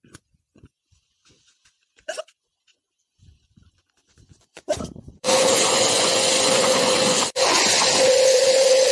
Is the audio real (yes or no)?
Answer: no